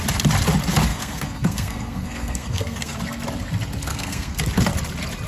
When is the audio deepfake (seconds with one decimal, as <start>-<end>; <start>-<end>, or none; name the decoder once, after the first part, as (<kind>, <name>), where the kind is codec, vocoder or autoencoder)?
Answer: 0.9-3.0 (codec, SNAC); 3.9-4.4